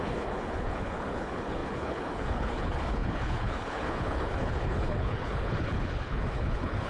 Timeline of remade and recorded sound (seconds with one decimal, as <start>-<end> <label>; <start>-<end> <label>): 0.0-6.9 remade